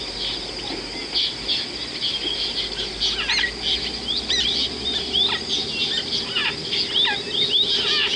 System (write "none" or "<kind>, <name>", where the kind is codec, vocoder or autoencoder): none